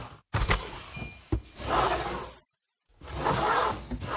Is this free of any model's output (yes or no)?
yes